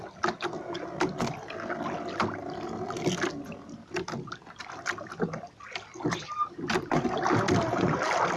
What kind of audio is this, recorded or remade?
recorded